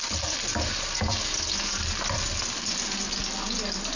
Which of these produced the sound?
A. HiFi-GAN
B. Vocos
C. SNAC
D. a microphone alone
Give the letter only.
D